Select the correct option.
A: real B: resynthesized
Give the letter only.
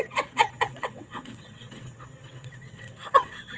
B